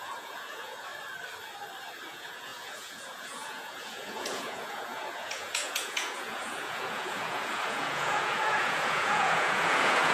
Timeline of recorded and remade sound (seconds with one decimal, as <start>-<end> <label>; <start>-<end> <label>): 0.0-0.9 remade; 0.9-2.1 recorded; 2.1-10.1 remade